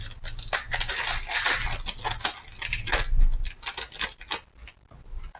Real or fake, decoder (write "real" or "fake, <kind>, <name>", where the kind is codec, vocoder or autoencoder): real